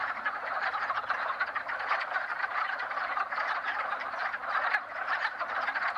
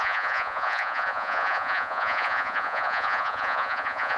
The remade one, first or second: second